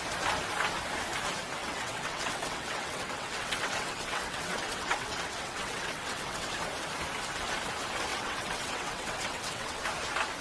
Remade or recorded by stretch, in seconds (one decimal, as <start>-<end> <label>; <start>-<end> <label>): 0.0-1.6 recorded; 1.6-6.5 remade; 6.5-8.1 recorded; 8.1-9.8 remade; 9.8-10.4 recorded